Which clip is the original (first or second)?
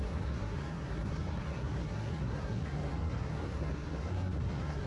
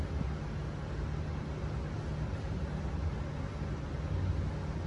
second